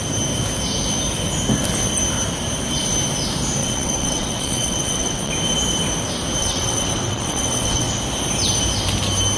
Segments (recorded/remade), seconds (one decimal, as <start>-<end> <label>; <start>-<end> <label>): 0.0-3.6 recorded; 3.6-5.3 remade; 5.3-6.4 recorded; 6.4-8.0 remade; 8.0-9.4 recorded